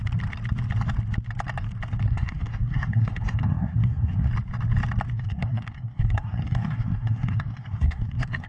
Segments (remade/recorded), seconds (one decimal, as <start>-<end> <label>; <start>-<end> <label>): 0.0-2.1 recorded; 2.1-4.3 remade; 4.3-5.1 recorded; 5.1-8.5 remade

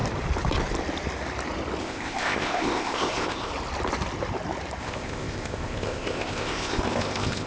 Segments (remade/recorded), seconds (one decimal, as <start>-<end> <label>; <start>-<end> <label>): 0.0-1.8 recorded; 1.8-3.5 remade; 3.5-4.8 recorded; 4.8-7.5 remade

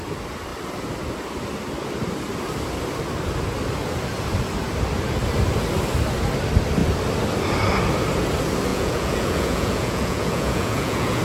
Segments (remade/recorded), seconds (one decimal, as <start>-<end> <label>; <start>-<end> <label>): 0.0-8.7 recorded; 8.7-11.2 remade